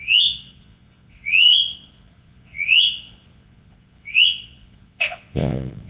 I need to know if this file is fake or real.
fake